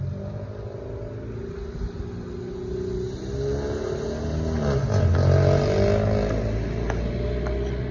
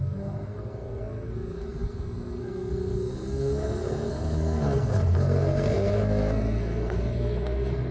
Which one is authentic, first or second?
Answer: first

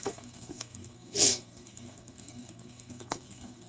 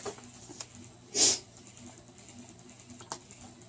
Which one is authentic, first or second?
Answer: second